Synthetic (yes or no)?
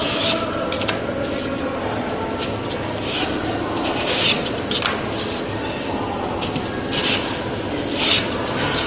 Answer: no